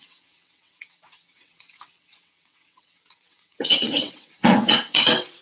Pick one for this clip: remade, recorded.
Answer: remade